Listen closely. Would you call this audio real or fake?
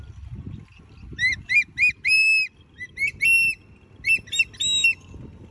real